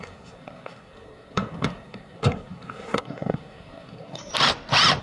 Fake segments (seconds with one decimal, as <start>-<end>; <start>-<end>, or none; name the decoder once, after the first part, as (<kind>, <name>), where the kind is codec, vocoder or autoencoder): 0.0-4.3 (codec, SNAC)